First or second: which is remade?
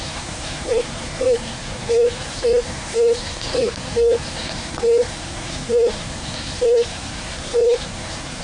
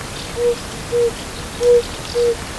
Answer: first